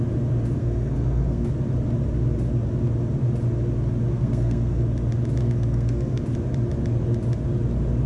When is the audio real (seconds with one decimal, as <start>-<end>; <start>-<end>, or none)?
0.0-0.6; 1.5-4.1; 4.8-5.4; 6.2-8.1